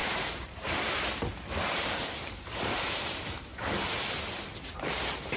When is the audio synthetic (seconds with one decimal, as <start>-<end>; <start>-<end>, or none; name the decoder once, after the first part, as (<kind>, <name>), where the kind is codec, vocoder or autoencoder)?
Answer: 0.0-3.5 (vocoder, BigVGAN v2); 4.5-5.4